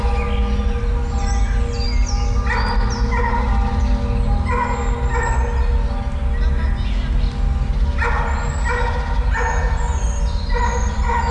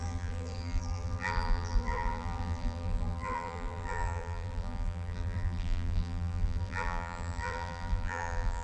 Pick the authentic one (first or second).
first